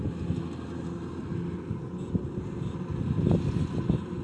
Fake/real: real